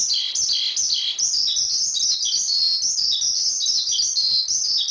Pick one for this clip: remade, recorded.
recorded